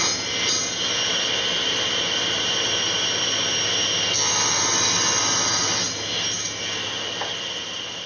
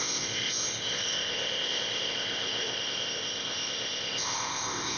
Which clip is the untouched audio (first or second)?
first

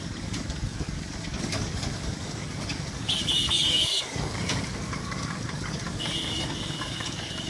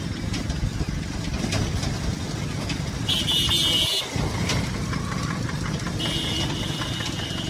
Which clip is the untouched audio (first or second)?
second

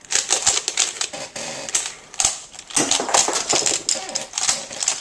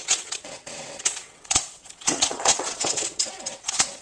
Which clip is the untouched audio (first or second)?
first